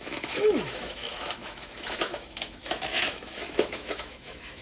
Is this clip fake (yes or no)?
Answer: yes